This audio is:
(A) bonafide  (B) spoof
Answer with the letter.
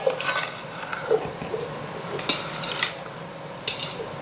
A